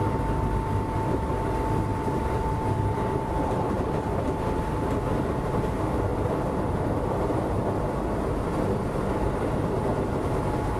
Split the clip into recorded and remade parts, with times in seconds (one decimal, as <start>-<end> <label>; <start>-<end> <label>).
0.0-1.9 recorded; 1.9-4.7 remade; 4.7-6.1 recorded; 6.1-7.5 remade; 7.5-10.8 recorded